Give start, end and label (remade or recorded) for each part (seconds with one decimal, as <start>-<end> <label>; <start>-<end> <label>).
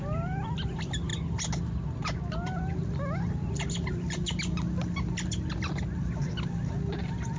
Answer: 0.0-7.4 recorded